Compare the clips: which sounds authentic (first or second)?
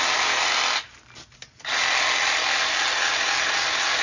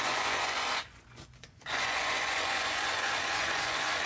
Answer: first